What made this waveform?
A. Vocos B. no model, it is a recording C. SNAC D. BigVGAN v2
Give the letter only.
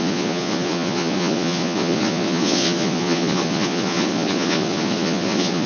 A